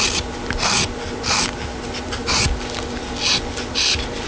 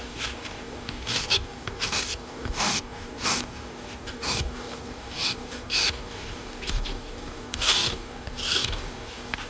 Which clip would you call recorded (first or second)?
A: first